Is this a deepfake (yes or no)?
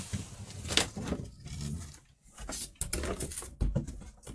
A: no